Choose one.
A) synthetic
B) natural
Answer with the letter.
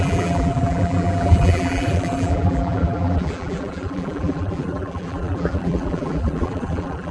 A